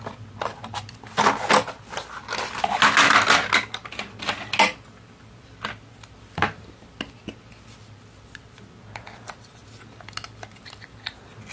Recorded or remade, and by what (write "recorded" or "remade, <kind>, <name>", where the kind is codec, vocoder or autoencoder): recorded